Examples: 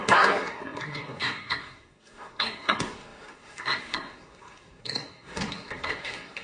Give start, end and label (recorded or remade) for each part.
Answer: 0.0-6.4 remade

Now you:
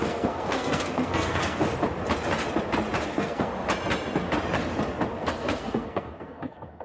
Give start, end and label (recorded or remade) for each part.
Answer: 0.0-1.6 remade; 1.6-3.1 recorded; 3.1-3.5 remade; 3.5-5.1 recorded; 5.1-6.8 remade

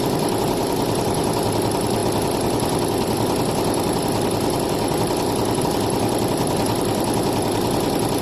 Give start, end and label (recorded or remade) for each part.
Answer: 0.0-8.2 recorded

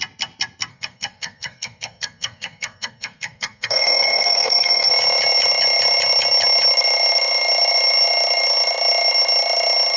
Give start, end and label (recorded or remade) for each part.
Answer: 0.0-0.7 recorded; 0.7-4.9 remade; 4.9-10.0 recorded

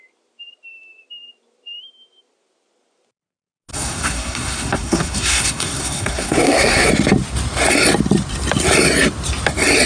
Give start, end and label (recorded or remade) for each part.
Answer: 0.0-3.7 recorded; 3.7-6.9 remade; 6.9-9.9 recorded

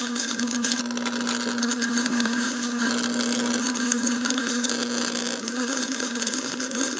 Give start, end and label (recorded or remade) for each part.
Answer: 0.0-0.8 remade; 0.8-1.6 recorded; 1.6-2.9 remade; 2.9-3.6 recorded; 3.6-4.7 remade; 4.7-5.4 recorded; 5.4-7.0 remade

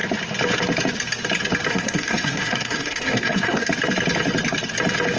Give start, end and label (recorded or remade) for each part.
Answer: 0.0-1.7 recorded; 1.7-3.7 remade; 3.7-5.2 recorded

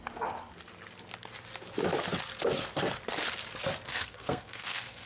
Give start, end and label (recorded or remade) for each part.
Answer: 0.0-3.9 recorded; 3.9-5.1 remade